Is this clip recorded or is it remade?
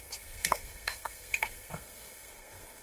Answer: remade